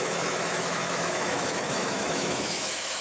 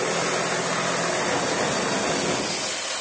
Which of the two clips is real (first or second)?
second